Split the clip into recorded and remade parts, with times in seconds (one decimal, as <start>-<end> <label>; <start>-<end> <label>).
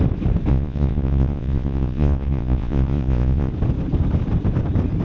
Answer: 0.0-0.5 recorded; 0.5-3.5 remade; 3.5-5.0 recorded